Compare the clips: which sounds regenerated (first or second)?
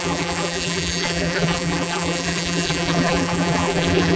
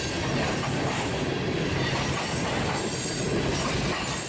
first